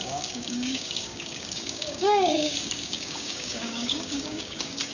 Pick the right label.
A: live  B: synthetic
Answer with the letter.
B